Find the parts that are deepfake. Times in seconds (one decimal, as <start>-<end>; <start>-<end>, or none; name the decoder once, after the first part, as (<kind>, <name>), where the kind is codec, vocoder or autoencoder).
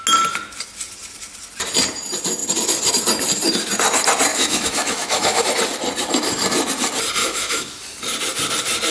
4.3-5.4 (autoencoder, DAC-VAE); 7.2-7.8